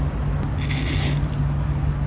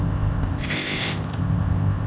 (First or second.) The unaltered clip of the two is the first